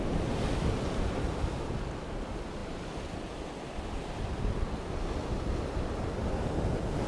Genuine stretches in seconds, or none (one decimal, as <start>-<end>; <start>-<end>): 0.0-7.1